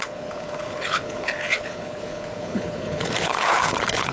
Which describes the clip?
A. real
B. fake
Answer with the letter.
B